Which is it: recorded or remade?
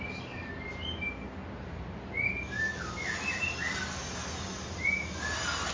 recorded